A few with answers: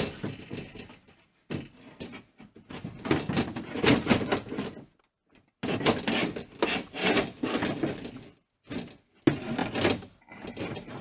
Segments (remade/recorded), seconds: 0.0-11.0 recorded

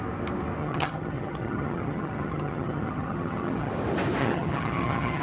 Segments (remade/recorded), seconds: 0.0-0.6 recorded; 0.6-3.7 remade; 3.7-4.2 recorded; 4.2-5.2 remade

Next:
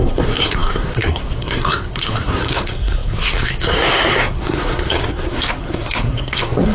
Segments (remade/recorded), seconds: 0.0-6.7 remade